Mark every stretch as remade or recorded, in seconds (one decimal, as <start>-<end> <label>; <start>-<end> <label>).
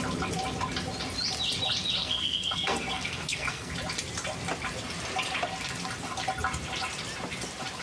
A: 0.0-2.0 recorded; 2.0-3.7 remade; 3.7-7.8 recorded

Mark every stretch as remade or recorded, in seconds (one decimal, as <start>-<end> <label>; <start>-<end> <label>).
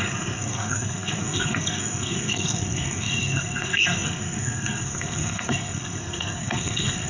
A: 0.0-7.1 remade